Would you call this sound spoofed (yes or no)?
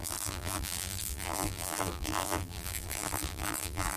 yes